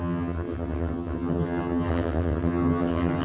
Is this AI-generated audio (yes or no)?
yes